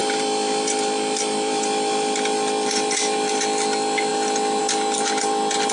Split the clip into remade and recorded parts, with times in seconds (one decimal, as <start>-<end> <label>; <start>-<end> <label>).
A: 0.0-3.4 remade; 3.4-5.7 recorded